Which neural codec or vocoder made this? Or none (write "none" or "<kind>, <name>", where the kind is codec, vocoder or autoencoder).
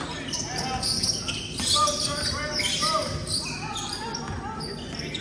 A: none